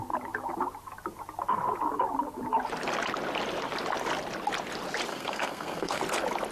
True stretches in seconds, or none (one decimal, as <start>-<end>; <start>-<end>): 0.0-5.1; 6.0-6.5

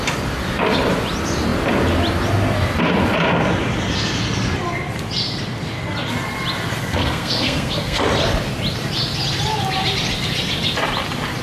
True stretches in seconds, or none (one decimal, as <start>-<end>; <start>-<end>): 0.0-6.8; 8.0-11.4

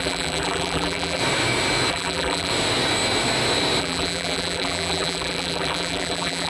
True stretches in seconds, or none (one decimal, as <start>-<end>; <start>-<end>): 1.2-1.9; 2.5-3.8